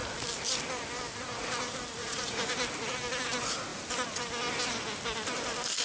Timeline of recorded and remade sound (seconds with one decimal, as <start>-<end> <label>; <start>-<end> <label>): 0.0-2.0 recorded; 2.0-2.5 remade; 2.5-5.8 recorded

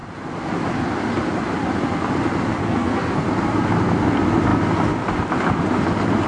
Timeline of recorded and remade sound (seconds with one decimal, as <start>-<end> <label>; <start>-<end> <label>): 0.0-2.6 recorded; 2.6-3.2 remade; 3.2-6.3 recorded